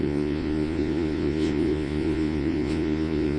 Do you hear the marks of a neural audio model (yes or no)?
yes